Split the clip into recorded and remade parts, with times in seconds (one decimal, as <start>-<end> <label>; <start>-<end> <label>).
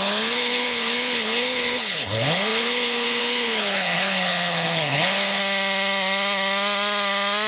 0.0-5.4 remade; 5.4-7.5 recorded